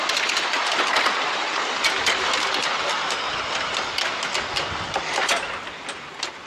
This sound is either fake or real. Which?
real